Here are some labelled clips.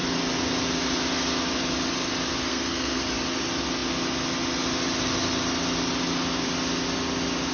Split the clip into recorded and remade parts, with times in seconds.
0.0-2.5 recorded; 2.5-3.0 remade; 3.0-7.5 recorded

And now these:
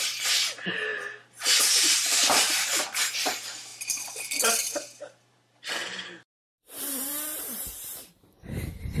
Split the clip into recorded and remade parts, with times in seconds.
0.0-0.9 remade; 0.9-1.6 recorded; 1.6-9.0 remade

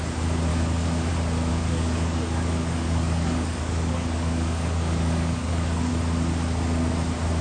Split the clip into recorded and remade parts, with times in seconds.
0.0-0.5 recorded; 0.5-1.1 remade; 1.1-1.5 recorded; 1.5-5.9 remade; 5.9-7.4 recorded

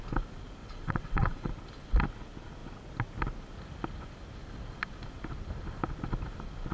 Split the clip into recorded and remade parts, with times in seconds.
0.0-0.6 recorded; 0.6-1.5 remade; 1.5-6.7 recorded

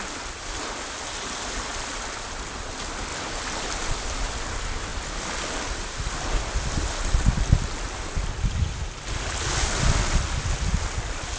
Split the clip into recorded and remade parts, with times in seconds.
0.0-11.4 recorded